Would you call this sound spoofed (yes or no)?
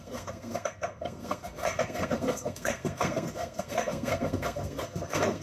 yes